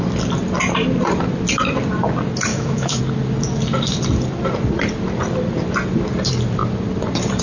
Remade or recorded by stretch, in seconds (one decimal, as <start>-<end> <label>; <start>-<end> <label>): 0.0-2.5 recorded; 2.5-3.0 remade; 3.0-7.4 recorded